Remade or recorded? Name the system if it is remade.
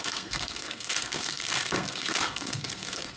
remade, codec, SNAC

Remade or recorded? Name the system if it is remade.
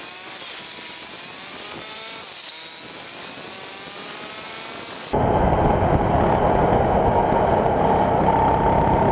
recorded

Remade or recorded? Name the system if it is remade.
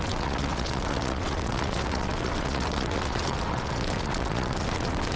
remade, vocoder, WaveNeXt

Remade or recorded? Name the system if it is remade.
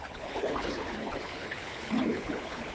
remade, codec, HILCodec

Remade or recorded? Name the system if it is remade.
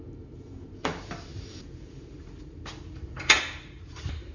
remade, vocoder, BigVGAN v2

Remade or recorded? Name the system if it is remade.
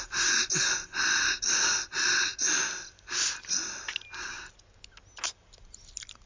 recorded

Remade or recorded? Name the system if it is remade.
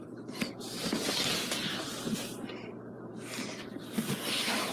remade, vocoder, BigVGAN v2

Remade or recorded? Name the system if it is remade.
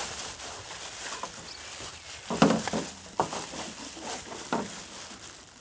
recorded